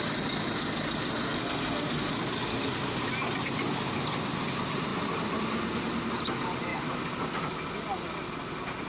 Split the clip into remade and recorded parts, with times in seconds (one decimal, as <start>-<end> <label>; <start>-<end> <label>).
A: 0.0-1.4 recorded; 1.4-2.1 remade; 2.1-8.9 recorded